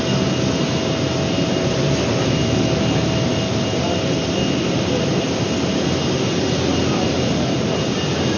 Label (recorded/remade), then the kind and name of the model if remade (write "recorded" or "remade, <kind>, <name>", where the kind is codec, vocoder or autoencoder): recorded